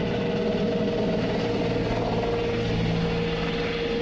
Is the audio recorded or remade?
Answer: recorded